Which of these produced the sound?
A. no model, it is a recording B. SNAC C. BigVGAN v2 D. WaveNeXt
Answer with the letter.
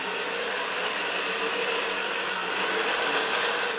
A